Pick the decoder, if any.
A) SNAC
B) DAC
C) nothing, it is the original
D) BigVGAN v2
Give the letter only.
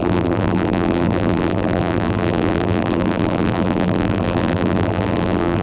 D